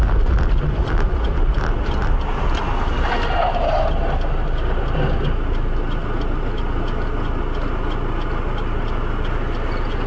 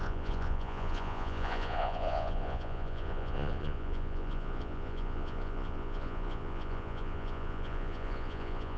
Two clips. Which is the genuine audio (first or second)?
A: first